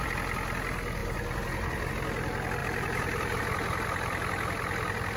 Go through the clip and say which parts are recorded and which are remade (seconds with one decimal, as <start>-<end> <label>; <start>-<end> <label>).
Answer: 0.0-1.0 recorded; 1.0-1.9 remade; 1.9-2.6 recorded; 2.6-3.4 remade; 3.4-5.2 recorded

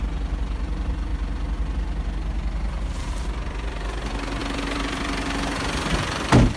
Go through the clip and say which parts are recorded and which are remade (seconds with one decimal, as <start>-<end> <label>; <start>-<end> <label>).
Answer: 0.0-1.1 remade; 1.1-2.9 recorded; 2.9-6.6 remade

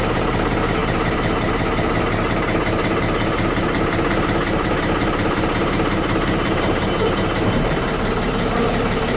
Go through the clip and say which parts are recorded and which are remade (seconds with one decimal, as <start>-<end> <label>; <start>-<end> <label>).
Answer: 0.0-9.2 remade

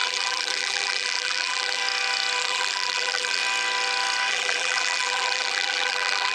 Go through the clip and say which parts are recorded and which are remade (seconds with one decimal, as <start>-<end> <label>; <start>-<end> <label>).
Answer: 0.0-1.8 remade; 1.8-2.4 recorded; 2.4-3.4 remade; 3.4-4.3 recorded; 4.3-6.3 remade